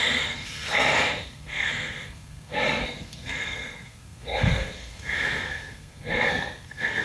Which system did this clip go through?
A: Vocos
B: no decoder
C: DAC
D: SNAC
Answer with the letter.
D